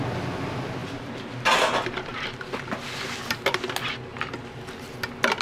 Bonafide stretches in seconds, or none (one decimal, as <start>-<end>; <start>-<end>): 0.0-5.4